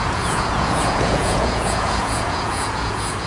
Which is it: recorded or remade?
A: remade